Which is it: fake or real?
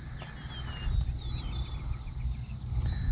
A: real